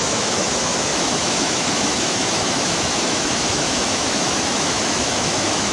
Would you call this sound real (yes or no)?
no